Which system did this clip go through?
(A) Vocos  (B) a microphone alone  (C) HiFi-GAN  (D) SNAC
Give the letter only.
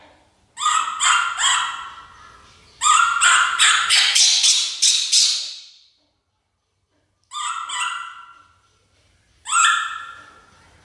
B